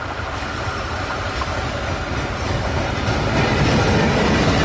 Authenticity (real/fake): real